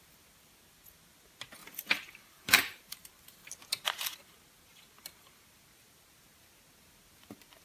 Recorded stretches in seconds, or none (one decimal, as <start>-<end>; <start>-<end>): 0.0-1.6; 3.1-7.6